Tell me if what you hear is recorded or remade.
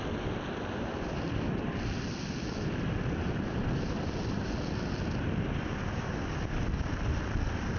recorded